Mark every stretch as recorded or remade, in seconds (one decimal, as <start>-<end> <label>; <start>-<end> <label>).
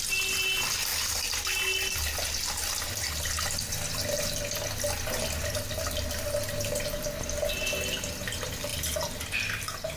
0.0-10.0 recorded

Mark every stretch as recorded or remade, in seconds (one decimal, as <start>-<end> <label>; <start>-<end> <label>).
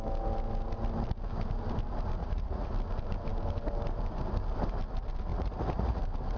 0.0-2.2 recorded; 2.2-2.7 remade; 2.7-5.3 recorded; 5.3-6.0 remade; 6.0-6.4 recorded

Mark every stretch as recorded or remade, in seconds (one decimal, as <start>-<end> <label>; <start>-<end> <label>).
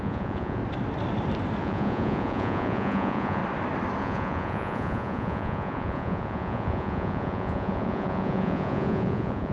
0.0-0.6 remade; 0.6-1.6 recorded; 1.6-3.4 remade; 3.4-4.0 recorded; 4.0-9.5 remade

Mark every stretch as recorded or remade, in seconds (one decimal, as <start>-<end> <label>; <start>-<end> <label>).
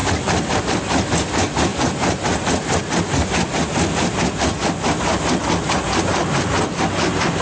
0.0-7.4 recorded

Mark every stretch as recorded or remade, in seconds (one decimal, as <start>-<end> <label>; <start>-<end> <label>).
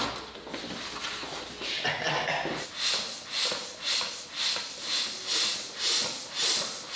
0.0-7.0 recorded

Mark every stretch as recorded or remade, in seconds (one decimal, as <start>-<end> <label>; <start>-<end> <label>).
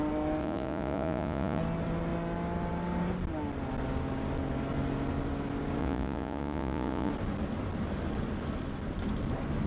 0.0-0.4 recorded; 0.4-1.6 remade; 1.6-5.8 recorded; 5.8-7.1 remade; 7.1-9.7 recorded